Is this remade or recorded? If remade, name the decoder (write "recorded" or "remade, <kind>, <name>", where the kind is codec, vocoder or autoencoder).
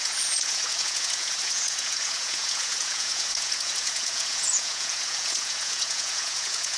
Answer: remade, vocoder, Vocos